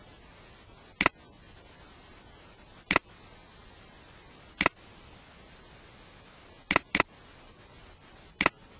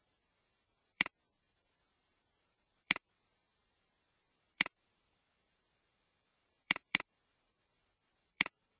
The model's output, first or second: second